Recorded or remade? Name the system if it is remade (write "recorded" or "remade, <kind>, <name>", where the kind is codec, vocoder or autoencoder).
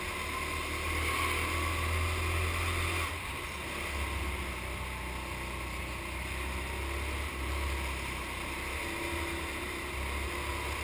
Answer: recorded